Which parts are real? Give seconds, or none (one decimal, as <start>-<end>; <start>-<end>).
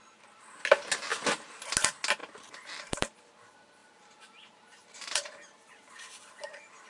0.0-2.2; 3.2-3.8; 6.0-6.9